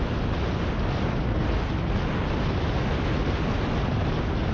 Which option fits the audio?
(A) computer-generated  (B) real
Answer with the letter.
B